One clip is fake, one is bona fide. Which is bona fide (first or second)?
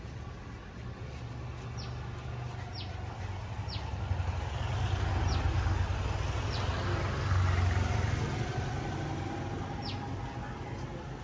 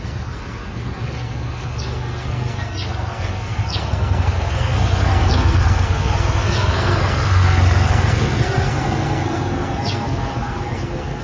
first